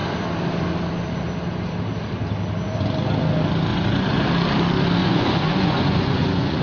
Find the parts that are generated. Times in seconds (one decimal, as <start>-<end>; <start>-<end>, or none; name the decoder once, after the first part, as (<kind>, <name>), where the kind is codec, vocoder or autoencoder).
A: 3.7-4.2 (vocoder, Vocos); 5.0-6.6